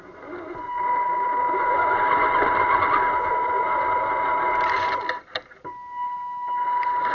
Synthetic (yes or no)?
no